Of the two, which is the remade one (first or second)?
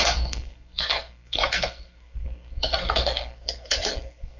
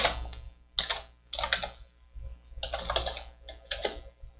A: first